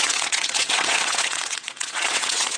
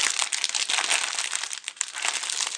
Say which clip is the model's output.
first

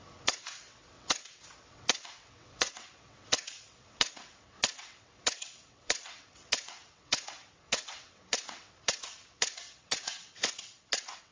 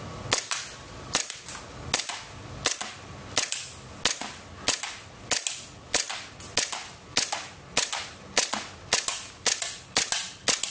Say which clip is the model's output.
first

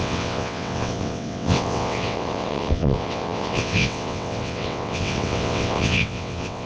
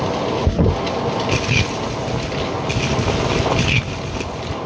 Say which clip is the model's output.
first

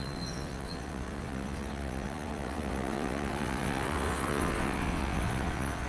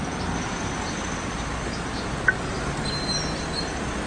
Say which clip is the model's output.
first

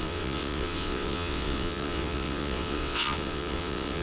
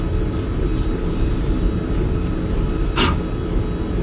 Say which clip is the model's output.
first